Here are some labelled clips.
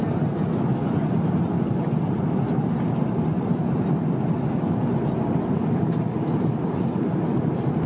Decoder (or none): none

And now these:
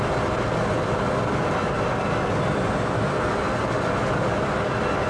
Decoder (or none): none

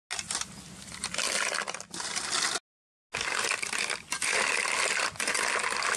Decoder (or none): none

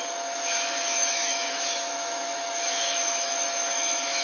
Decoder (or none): autoencoder, DAC-VAE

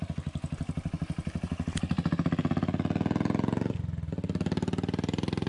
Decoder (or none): none